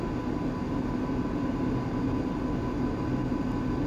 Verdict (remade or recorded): recorded